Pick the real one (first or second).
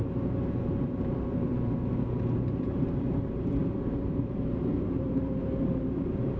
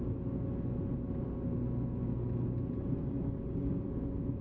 second